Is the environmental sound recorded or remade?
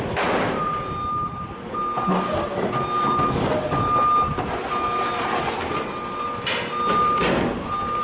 recorded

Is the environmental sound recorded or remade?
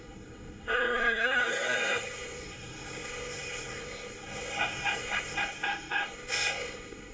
remade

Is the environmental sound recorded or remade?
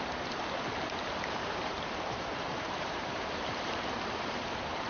remade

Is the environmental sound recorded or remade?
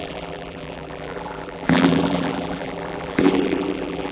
remade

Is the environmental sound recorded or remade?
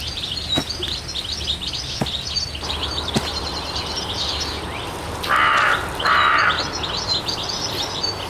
recorded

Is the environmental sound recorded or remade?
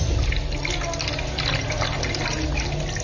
recorded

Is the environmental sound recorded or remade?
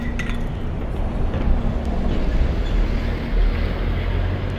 recorded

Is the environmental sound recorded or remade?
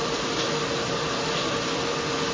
recorded